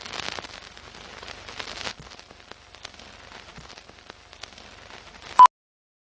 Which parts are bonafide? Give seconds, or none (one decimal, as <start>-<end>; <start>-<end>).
0.0-6.0